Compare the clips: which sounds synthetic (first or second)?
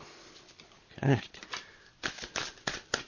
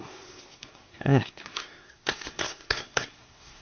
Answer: second